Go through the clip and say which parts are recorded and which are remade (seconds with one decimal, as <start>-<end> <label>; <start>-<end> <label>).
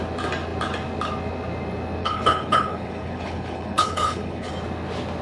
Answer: 0.0-2.0 recorded; 2.0-4.5 remade; 4.5-5.2 recorded